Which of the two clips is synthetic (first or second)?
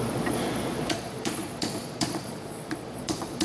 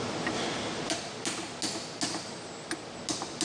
first